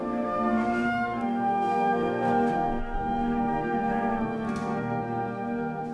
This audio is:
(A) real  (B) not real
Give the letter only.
B